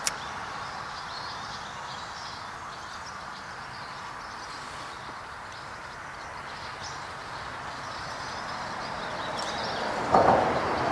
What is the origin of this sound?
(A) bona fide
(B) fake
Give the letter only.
A